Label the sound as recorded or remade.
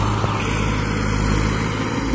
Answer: recorded